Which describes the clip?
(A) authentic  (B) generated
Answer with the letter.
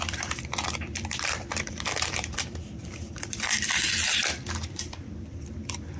B